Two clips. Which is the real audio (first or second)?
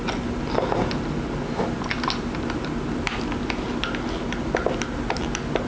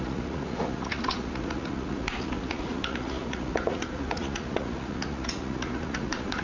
first